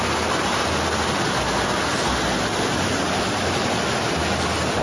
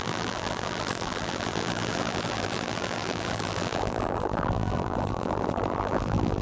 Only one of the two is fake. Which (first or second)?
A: second